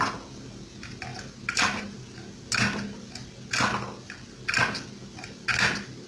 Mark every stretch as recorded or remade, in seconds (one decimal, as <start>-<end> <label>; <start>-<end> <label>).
0.0-1.1 recorded; 1.1-1.8 remade; 1.8-6.1 recorded